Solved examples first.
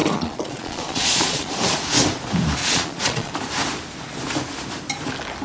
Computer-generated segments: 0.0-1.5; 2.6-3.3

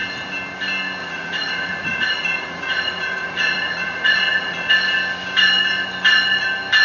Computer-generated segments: 1.0-4.7

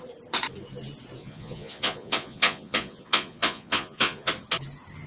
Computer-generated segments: 1.2-4.3

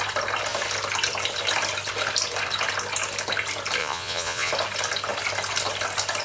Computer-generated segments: 3.8-4.5

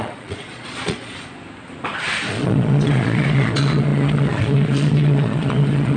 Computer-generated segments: 0.0-1.1; 2.3-6.0

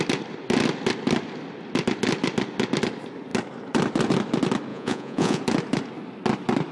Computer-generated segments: 4.7-5.4

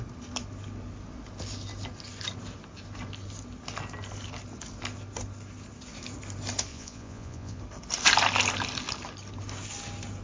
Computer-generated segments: 6.7-7.6